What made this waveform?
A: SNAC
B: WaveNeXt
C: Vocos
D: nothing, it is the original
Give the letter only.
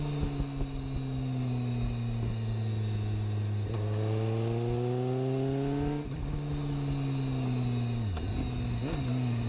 D